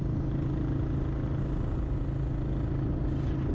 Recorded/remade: recorded